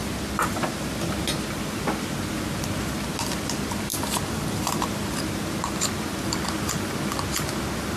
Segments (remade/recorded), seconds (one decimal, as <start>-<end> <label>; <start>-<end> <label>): 0.0-3.9 recorded; 3.9-5.0 remade; 5.0-6.1 recorded; 6.1-7.2 remade; 7.2-8.0 recorded